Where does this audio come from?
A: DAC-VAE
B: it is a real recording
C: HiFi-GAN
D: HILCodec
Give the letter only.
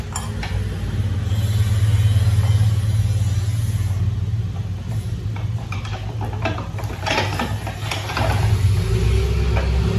B